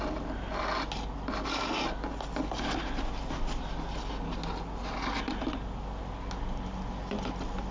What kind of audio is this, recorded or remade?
recorded